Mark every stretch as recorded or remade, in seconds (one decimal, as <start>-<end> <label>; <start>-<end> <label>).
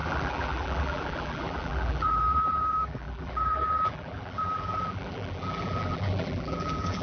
0.0-7.0 remade